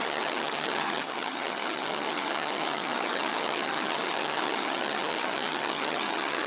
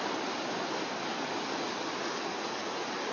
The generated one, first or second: first